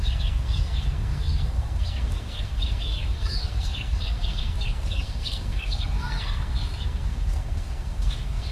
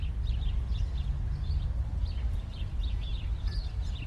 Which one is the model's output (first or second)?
first